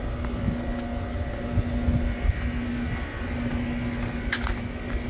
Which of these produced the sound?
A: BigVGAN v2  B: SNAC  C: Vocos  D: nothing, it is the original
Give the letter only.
D